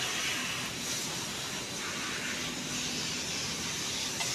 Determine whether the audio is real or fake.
real